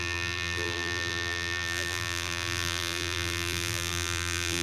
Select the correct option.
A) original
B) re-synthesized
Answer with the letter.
B